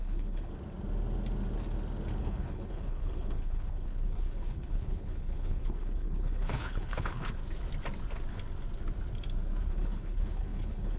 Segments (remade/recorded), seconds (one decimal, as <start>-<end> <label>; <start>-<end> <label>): 0.0-0.5 remade; 0.5-2.2 recorded; 2.2-7.4 remade; 7.4-9.6 recorded; 9.6-11.0 remade